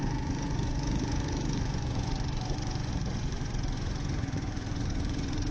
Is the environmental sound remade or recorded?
remade